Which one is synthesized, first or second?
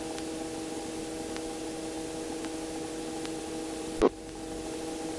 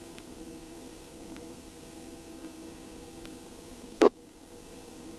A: second